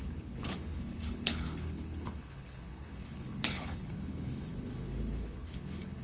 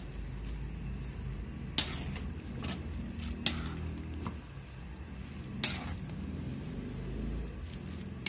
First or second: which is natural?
second